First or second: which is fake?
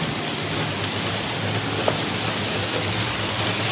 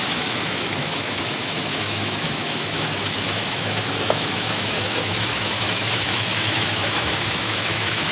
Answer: second